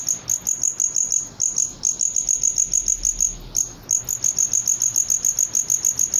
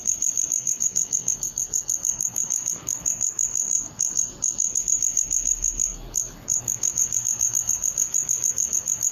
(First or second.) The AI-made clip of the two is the second